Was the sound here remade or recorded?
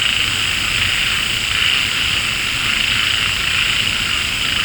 recorded